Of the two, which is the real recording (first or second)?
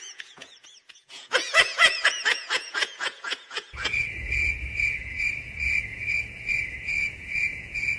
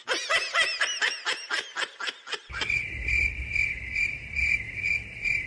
second